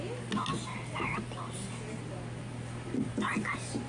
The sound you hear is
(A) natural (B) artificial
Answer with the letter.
A